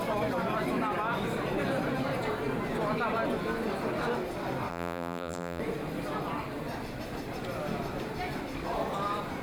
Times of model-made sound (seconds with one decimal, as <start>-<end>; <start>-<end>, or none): 4.7-5.6